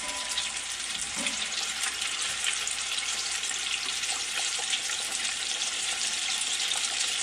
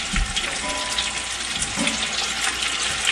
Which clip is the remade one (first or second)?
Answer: first